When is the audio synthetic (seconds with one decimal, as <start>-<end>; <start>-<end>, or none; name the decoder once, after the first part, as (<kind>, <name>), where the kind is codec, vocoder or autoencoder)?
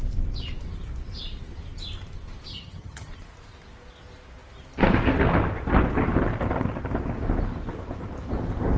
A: 2.5-3.1 (vocoder, HiFi-GAN)